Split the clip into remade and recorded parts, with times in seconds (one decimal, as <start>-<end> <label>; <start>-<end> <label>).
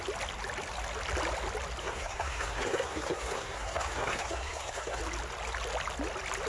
0.0-1.8 recorded; 1.8-5.0 remade; 5.0-6.5 recorded